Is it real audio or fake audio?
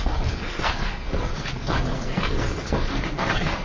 fake